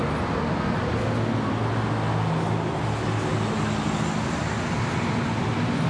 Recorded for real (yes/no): yes